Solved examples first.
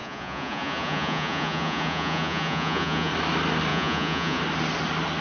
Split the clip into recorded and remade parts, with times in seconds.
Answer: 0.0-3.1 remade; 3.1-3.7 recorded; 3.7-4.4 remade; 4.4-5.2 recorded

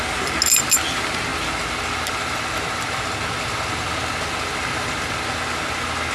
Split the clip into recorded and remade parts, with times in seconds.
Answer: 0.0-6.1 recorded

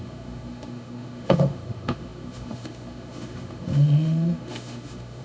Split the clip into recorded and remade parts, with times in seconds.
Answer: 0.0-5.2 remade

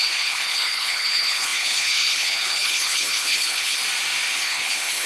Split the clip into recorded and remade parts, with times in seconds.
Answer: 0.0-3.8 remade; 3.8-4.3 recorded; 4.3-5.1 remade